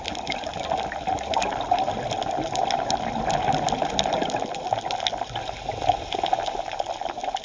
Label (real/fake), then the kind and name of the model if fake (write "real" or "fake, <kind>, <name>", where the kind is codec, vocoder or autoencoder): real